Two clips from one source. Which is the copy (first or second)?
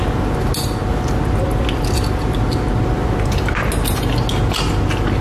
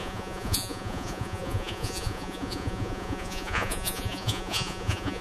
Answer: second